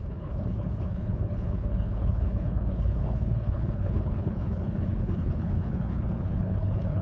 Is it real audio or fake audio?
fake